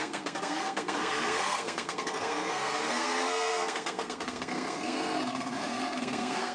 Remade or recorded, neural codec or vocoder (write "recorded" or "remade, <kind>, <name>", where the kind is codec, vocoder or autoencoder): remade, codec, SNAC